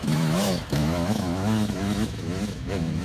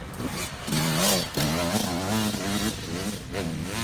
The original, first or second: second